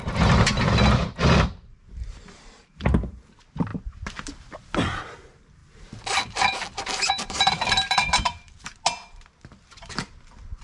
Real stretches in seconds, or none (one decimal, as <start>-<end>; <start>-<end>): 5.6-7.1; 8.7-10.6